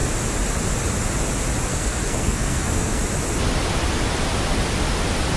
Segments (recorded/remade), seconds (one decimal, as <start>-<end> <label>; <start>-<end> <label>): 0.0-1.7 recorded; 1.7-3.0 remade; 3.0-5.4 recorded

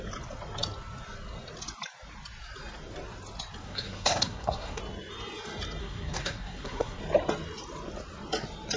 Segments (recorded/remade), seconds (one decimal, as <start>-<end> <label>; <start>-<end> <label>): 0.0-3.6 recorded; 3.6-4.8 remade; 4.8-5.8 recorded; 5.8-7.0 remade; 7.0-8.8 recorded

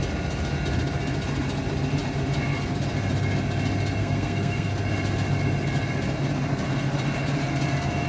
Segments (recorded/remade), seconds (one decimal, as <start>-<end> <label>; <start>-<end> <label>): 0.0-4.0 recorded; 4.0-4.7 remade; 4.7-8.1 recorded

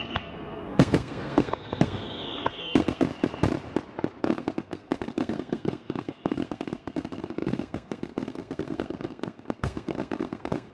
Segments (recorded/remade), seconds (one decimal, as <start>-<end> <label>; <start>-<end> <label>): 0.0-3.1 remade; 3.1-4.2 recorded; 4.2-10.7 remade